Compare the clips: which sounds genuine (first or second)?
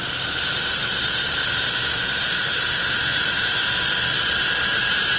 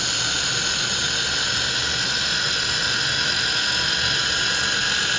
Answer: second